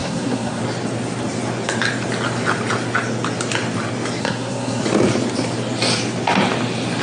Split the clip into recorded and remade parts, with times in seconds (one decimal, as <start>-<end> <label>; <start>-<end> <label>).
0.0-0.6 remade; 0.6-4.2 recorded; 4.2-4.8 remade; 4.8-7.0 recorded